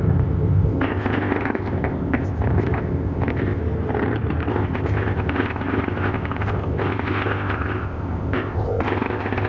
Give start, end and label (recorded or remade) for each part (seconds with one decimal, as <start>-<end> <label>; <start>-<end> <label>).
0.0-3.6 remade; 3.6-4.5 recorded; 4.5-9.5 remade